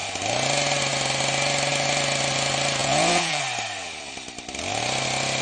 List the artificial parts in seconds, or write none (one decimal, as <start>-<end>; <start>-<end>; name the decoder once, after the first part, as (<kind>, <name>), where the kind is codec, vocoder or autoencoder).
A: 2.8-3.4 (vocoder, Vocos)